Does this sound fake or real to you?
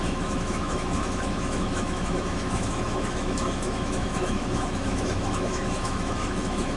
fake